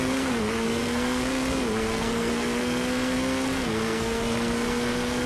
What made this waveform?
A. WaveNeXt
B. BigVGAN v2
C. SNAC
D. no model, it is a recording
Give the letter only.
C